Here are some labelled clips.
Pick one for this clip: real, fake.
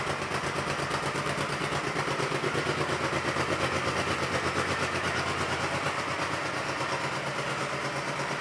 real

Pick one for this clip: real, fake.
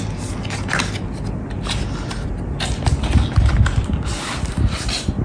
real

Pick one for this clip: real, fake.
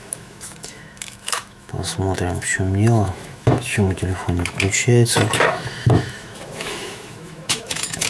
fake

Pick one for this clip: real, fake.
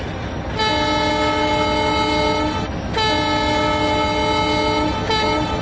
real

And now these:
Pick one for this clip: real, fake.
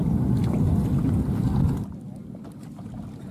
real